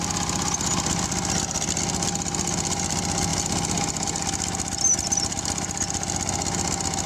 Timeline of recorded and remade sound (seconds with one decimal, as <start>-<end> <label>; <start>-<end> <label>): 0.0-7.1 recorded